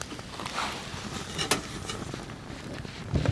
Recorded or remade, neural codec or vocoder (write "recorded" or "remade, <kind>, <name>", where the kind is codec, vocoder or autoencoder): recorded